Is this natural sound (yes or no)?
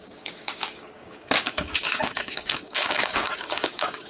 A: no